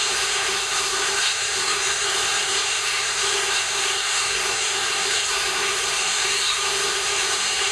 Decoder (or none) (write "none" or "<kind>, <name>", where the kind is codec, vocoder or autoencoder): codec, SNAC